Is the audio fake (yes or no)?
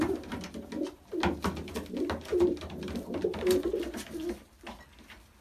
no